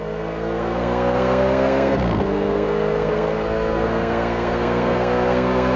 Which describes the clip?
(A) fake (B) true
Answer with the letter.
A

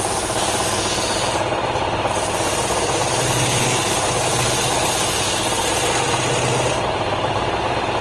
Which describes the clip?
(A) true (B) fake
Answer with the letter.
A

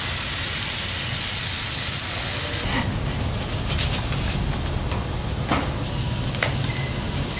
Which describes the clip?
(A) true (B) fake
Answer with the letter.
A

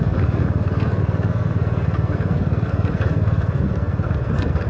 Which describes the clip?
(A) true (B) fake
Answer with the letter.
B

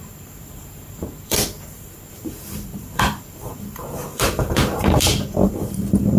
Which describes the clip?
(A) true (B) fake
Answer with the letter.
B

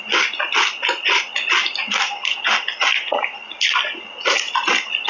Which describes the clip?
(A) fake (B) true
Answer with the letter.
B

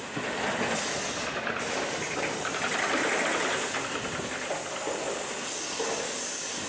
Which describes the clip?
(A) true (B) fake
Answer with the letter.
A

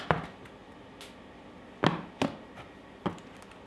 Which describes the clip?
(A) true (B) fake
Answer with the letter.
A